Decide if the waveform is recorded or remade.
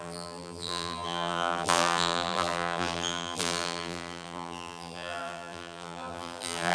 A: remade